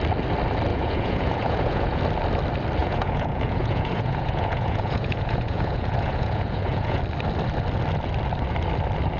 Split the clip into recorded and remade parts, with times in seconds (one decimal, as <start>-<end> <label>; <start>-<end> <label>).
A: 0.0-0.7 recorded; 0.7-2.0 remade; 2.0-2.8 recorded; 2.8-7.0 remade; 7.0-9.2 recorded